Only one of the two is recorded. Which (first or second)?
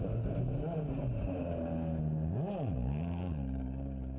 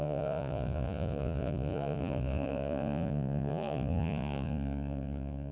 first